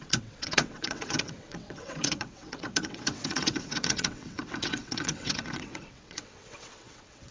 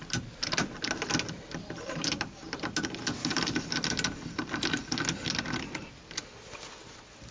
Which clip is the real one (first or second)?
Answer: second